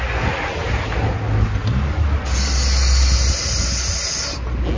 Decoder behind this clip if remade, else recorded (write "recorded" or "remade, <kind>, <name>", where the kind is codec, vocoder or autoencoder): recorded